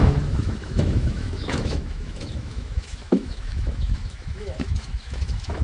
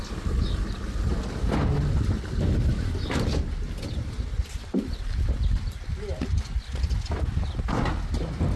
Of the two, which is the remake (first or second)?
first